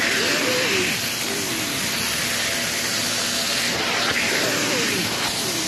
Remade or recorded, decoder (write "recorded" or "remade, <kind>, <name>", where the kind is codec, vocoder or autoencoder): recorded